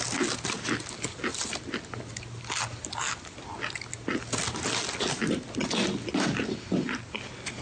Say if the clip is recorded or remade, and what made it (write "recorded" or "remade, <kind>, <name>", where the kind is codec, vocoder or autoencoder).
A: recorded